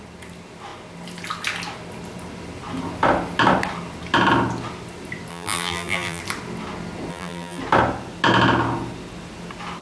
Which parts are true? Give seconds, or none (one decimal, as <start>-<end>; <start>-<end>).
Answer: 0.0-5.3; 6.2-7.1; 7.6-9.8